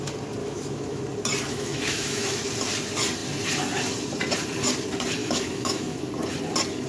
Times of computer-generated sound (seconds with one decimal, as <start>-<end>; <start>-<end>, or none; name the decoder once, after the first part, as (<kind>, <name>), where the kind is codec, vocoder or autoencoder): 0.4-1.0 (autoencoder, DAC-VAE); 1.5-2.4; 5.2-6.0